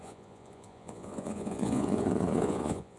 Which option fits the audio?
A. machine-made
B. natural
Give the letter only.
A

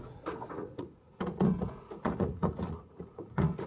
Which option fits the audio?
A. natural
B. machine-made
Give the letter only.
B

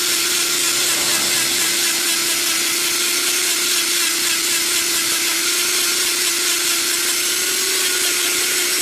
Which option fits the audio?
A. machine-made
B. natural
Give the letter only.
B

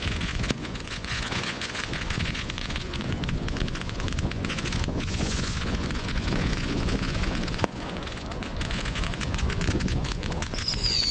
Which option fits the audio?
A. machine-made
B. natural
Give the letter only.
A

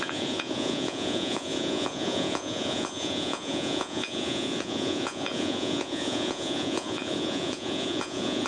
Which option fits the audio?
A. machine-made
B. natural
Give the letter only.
A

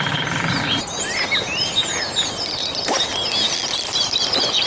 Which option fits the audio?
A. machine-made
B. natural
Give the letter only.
B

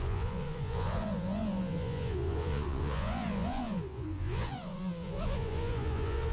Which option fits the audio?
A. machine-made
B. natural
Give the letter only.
A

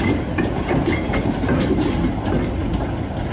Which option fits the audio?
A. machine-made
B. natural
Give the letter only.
B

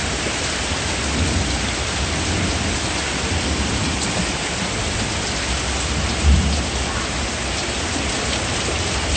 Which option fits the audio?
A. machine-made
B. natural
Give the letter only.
B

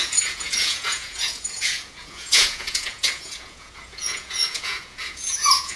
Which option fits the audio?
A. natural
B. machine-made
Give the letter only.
B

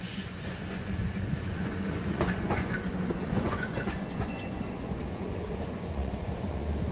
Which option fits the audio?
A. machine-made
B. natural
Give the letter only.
A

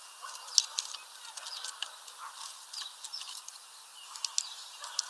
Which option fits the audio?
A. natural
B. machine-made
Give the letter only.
A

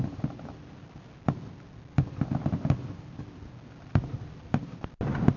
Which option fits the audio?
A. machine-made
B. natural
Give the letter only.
B